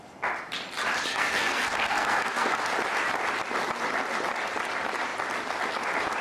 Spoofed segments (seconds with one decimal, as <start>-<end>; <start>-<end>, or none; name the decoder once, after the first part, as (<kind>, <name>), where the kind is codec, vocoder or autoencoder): 1.1-2.6 (codec, SNAC)